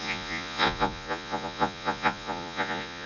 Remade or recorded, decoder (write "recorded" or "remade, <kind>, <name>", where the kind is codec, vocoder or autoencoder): remade, vocoder, Vocos